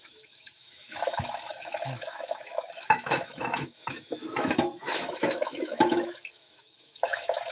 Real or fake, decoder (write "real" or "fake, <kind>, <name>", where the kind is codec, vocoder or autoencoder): fake, autoencoder, DAC-VAE